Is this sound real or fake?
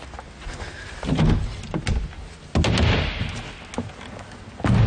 real